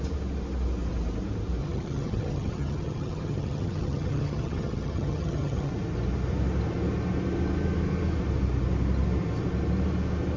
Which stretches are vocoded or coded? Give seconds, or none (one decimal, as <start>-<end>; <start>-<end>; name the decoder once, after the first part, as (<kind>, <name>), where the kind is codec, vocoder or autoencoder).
1.6-5.7 (vocoder, HiFi-GAN)